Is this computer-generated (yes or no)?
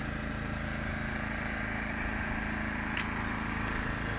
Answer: no